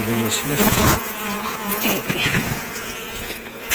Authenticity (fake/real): fake